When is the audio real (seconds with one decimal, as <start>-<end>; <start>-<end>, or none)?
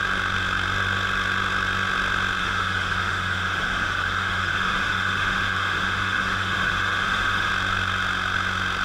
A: 0.0-2.4; 7.5-8.8